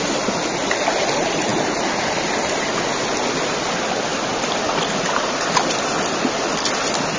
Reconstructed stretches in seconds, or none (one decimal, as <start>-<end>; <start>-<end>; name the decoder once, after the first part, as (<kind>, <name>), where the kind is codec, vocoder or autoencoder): none

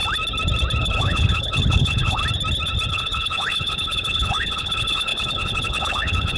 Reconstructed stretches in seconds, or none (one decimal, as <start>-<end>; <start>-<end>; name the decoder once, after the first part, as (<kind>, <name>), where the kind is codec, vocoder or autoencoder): 0.8-2.2 (codec, HILCodec); 2.9-6.4

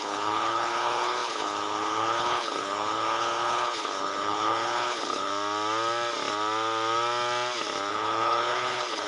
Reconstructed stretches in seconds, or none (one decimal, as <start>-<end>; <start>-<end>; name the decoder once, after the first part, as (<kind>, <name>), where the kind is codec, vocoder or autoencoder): 0.0-5.3 (codec, HILCodec); 7.9-9.1

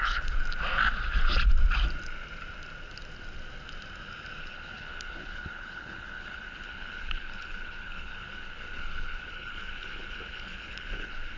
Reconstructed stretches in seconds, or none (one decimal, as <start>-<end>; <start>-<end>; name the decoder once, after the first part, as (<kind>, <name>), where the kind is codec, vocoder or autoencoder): 0.0-0.4 (codec, HILCodec); 4.4-11.4